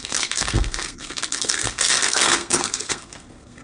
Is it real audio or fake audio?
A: fake